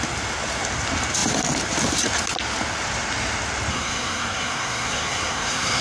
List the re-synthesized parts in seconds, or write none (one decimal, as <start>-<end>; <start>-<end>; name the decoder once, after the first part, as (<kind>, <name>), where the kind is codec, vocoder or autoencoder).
3.7-5.8 (codec, SNAC)